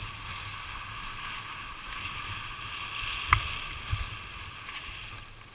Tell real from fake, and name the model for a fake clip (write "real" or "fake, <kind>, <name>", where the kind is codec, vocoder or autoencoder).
real